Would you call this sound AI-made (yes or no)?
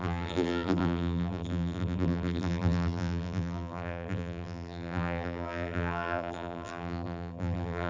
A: yes